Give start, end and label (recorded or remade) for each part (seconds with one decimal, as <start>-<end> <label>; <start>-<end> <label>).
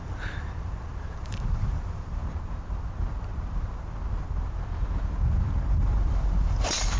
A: 0.0-2.2 remade; 2.2-5.7 recorded; 5.7-7.0 remade